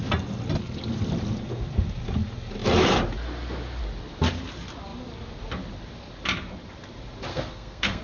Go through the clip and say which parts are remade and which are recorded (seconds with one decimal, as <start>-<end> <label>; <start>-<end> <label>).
0.0-7.3 recorded; 7.3-8.0 remade